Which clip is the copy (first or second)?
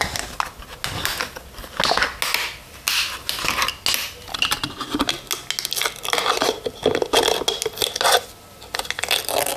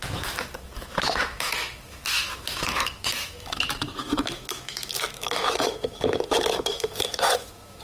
second